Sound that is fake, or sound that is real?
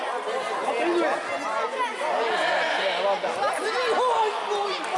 real